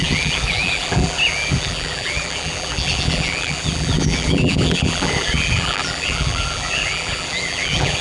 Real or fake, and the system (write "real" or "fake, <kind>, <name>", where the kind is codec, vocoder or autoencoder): fake, vocoder, BigVGAN v2